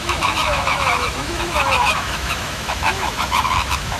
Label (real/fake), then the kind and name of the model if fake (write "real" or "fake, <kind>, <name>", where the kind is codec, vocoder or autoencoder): fake, autoencoder, DAC-VAE